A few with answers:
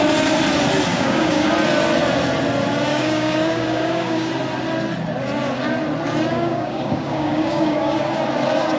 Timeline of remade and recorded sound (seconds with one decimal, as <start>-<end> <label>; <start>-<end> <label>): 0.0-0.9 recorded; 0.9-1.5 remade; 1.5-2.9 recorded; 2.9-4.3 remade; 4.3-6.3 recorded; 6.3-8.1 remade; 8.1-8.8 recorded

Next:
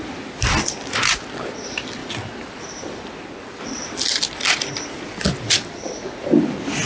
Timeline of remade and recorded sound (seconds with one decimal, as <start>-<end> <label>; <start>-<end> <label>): 0.0-2.0 recorded; 2.0-6.1 remade; 6.1-6.9 recorded

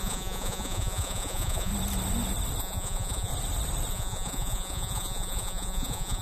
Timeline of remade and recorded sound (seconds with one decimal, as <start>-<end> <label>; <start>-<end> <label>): 0.0-1.7 remade; 1.7-2.6 recorded; 2.6-3.3 remade; 3.3-3.9 recorded; 3.9-6.2 remade

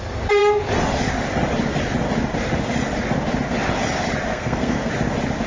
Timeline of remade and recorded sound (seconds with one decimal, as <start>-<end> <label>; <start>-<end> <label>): 0.0-4.3 recorded; 4.3-4.9 remade; 4.9-5.5 recorded